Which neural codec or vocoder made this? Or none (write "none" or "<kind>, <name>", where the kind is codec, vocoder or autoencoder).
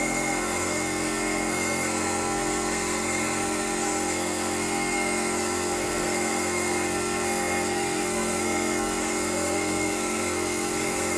codec, SNAC